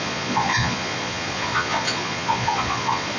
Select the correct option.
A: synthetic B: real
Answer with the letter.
A